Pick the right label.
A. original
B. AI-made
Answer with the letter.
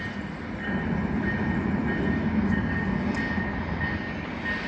A